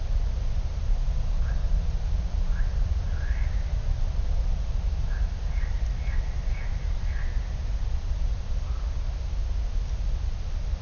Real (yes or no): yes